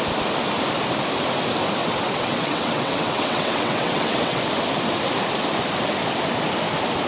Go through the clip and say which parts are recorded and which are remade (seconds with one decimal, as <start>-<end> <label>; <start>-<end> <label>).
0.0-1.8 recorded; 1.8-4.4 remade; 4.4-7.1 recorded